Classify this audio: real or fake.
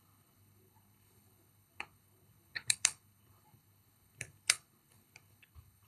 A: fake